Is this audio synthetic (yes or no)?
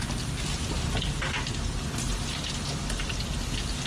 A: no